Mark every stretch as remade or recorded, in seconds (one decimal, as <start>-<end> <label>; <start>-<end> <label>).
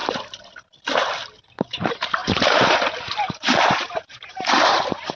0.0-1.4 recorded; 1.4-5.2 remade